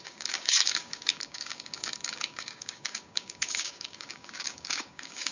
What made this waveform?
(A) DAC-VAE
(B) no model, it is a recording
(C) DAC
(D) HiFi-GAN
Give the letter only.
C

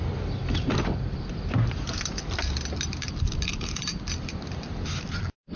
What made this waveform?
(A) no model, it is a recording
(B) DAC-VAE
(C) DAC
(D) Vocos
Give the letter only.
A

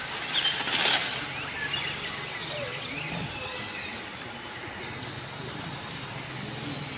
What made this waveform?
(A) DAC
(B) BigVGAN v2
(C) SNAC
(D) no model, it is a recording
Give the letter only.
D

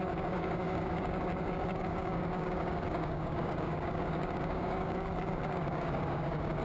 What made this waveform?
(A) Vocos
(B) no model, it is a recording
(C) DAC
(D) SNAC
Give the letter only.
C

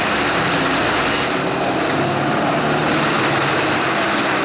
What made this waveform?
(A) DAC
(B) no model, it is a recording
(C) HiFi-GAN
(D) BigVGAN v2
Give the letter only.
B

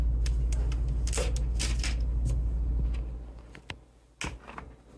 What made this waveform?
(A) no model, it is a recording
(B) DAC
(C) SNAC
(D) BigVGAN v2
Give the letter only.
A